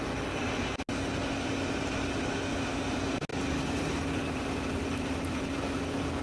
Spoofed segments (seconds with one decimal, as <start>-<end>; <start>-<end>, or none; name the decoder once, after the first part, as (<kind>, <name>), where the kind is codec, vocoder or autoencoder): 3.3-5.5 (vocoder, BigVGAN v2)